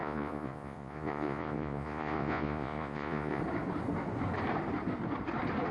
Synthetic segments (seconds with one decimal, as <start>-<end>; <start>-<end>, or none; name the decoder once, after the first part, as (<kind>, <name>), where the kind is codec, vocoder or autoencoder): 0.0-3.4 (vocoder, Vocos)